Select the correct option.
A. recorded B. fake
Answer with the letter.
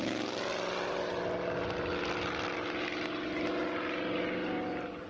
A